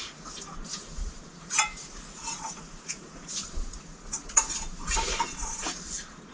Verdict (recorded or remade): remade